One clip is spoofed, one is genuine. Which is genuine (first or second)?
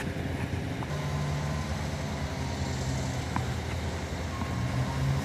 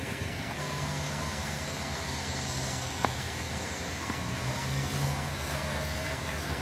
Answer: first